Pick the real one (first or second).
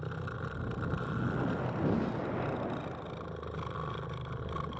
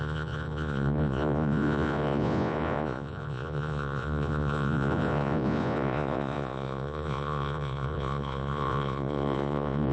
first